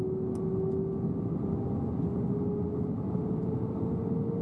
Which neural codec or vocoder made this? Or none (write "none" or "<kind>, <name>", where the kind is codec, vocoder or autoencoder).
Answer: none